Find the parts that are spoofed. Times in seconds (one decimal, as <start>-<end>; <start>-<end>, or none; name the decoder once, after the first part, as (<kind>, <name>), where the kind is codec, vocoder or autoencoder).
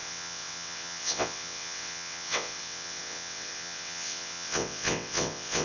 0.0-5.6 (vocoder, WaveNeXt)